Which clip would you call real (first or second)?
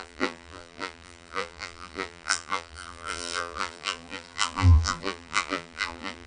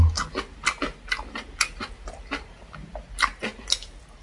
second